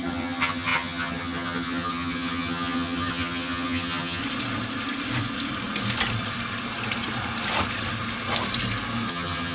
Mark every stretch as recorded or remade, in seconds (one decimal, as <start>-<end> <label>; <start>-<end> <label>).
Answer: 0.0-4.2 remade; 4.2-9.1 recorded; 9.1-9.5 remade